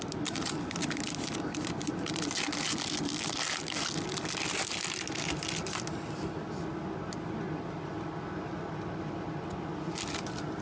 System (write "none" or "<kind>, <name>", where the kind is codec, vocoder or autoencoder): none